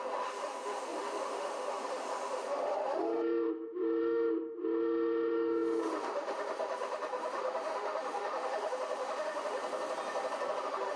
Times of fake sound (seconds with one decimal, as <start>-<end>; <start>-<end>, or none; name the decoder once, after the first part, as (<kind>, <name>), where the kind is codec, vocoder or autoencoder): 0.0-9.6 (autoencoder, DAC-VAE); 10.6-11.0

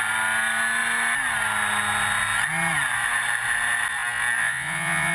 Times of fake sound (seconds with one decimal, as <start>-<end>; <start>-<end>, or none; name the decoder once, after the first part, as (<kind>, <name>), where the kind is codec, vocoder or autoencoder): 4.4-5.1 (vocoder, Vocos)

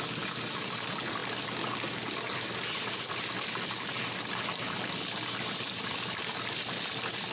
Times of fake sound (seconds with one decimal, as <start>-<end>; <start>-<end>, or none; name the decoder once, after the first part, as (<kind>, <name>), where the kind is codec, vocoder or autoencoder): none

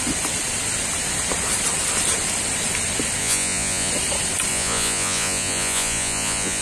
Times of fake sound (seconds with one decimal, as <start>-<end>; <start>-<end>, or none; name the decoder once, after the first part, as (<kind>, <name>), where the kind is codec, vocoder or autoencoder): 3.2-3.9 (vocoder, Vocos); 4.5-6.6

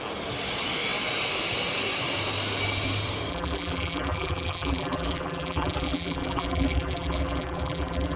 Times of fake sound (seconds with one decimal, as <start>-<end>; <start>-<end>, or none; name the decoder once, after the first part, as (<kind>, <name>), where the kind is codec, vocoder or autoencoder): 3.3-8.2 (vocoder, BigVGAN v2)

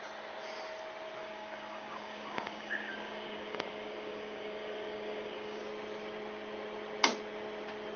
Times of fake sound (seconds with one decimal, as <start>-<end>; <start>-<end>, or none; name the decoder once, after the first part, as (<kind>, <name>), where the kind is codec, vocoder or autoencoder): 1.2-5.6 (codec, DAC)

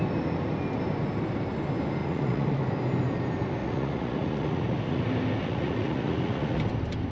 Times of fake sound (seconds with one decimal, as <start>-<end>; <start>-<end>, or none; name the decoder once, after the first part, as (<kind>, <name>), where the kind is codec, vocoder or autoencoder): 2.0-2.6 (vocoder, Vocos); 3.6-5.0; 5.4-6.6

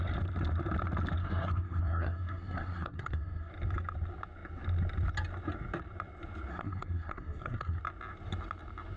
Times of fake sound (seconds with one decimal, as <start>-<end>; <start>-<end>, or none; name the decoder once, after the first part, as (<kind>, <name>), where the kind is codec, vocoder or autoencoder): 1.2-3.5 (codec, SNAC); 6.5-7.8